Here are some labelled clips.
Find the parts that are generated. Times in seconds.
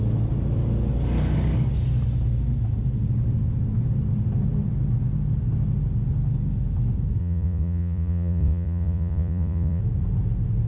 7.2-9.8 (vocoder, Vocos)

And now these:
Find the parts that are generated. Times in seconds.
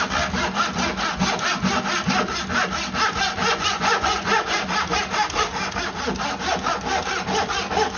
3.4-4.6 (vocoder, Vocos)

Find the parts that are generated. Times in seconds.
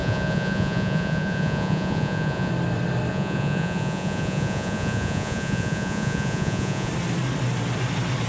0.0-2.5 (vocoder, Vocos); 3.1-6.9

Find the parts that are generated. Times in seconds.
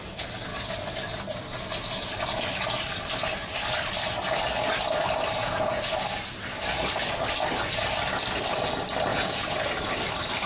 5.4-5.9 (vocoder, Vocos); 9.1-9.6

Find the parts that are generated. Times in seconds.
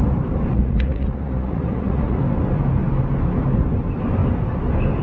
0.5-2.2 (vocoder, Vocos)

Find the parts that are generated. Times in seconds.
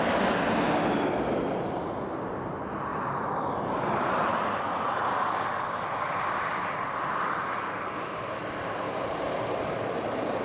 none